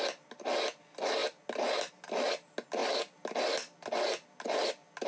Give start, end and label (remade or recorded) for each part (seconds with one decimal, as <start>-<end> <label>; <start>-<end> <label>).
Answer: 0.0-5.1 recorded